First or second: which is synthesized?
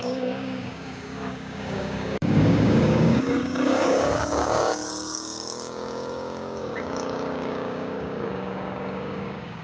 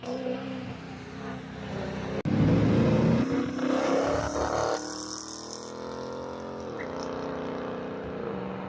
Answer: first